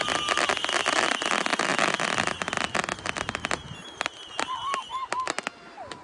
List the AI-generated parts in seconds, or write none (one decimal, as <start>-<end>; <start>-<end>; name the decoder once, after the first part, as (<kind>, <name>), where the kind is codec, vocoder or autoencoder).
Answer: none